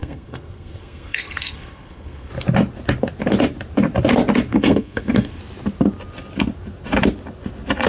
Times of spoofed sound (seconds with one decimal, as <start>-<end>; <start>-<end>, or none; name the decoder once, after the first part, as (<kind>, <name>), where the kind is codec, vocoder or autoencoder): 0.0-2.3 (codec, SNAC); 4.5-5.4